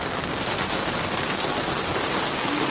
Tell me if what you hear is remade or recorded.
recorded